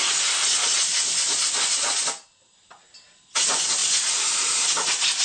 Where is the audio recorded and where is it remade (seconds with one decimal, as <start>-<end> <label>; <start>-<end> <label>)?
0.0-5.2 recorded